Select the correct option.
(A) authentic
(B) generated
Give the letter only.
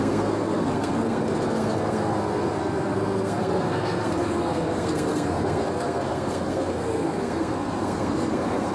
B